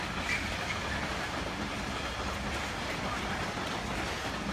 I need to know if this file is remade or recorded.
recorded